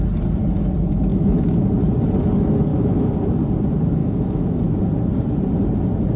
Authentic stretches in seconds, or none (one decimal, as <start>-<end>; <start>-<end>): 0.0-1.1; 1.6-2.7; 3.2-4.0; 4.8-6.2